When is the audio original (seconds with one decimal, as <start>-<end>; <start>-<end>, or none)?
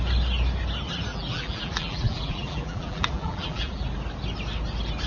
0.0-1.1; 3.8-5.1